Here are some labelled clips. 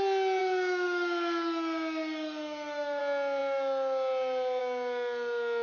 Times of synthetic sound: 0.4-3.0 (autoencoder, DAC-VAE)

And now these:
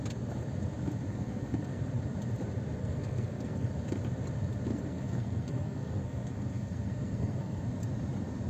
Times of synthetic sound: 1.1-1.8 (codec, SNAC); 2.8-3.7; 4.7-7.6